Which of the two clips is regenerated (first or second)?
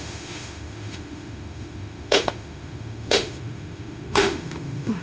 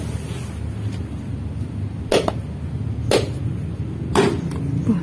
first